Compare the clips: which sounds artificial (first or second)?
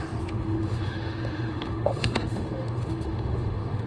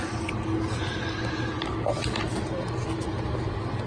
first